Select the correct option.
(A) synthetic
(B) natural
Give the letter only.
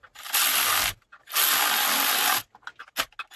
B